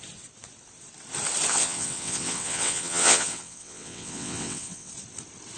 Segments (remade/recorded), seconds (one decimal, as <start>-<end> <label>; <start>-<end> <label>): 0.0-1.5 recorded; 1.5-4.9 remade; 4.9-5.6 recorded